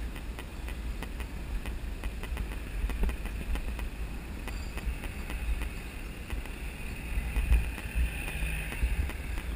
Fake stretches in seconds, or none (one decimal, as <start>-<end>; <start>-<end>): none